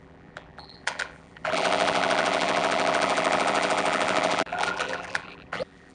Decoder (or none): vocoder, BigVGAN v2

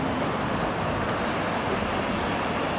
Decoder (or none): none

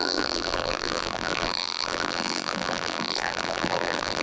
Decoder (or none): vocoder, BigVGAN v2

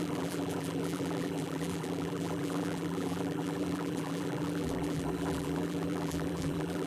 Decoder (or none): vocoder, BigVGAN v2